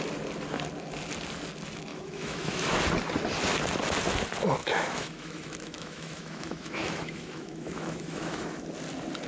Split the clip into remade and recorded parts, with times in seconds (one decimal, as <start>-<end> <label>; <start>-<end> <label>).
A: 0.0-1.9 recorded; 1.9-2.8 remade; 2.8-4.6 recorded; 4.6-8.6 remade; 8.6-9.3 recorded